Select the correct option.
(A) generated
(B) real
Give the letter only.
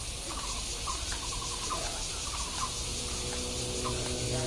B